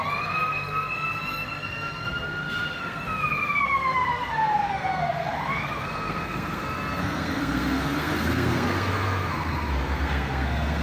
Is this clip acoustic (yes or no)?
no